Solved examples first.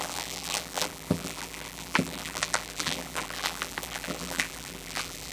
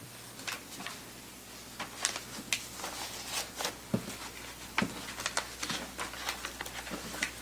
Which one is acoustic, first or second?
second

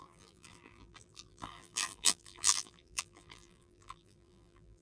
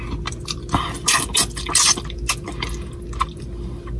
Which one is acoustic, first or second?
second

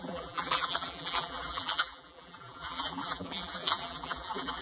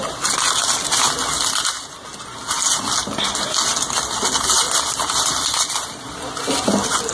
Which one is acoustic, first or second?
second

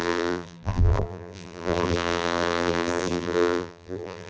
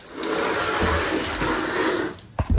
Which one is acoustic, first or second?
second